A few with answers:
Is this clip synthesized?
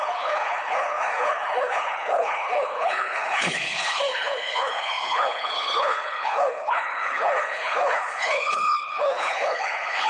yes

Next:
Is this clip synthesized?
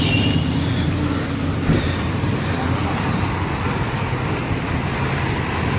no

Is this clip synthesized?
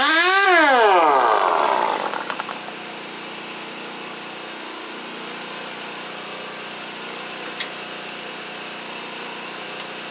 no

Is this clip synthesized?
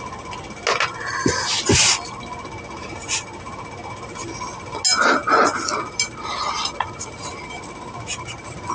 no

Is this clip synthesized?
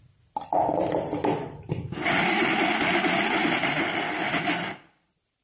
no